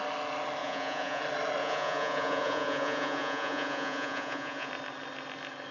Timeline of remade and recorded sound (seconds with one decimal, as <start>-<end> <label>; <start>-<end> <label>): 0.0-0.6 recorded; 0.6-1.2 remade; 1.2-1.6 recorded; 1.6-4.7 remade; 4.7-5.7 recorded